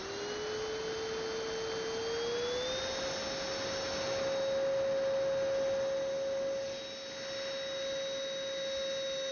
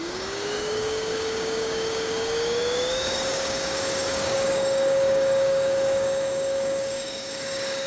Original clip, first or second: first